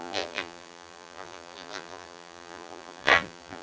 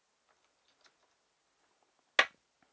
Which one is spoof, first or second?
first